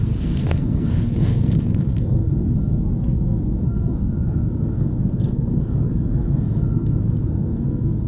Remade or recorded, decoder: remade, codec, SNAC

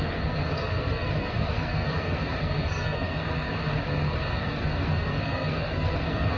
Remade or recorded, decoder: remade, codec, SNAC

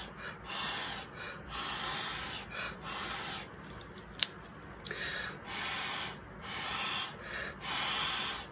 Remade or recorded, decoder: recorded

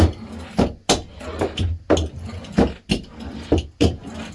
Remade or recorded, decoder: recorded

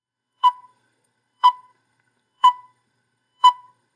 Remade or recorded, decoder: remade, codec, SNAC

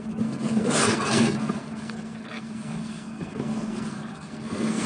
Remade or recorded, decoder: remade, codec, SNAC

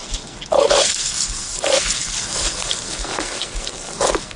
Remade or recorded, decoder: remade, codec, SNAC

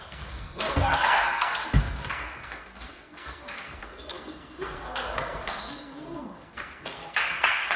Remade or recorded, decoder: remade, codec, SNAC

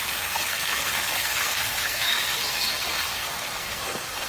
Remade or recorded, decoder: remade, codec, SNAC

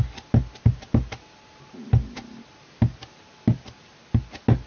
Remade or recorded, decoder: recorded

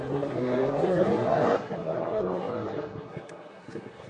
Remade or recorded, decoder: remade, codec, SNAC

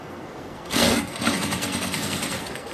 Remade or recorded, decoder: remade, codec, SNAC